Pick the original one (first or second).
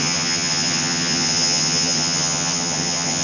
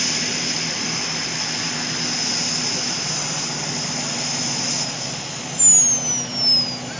second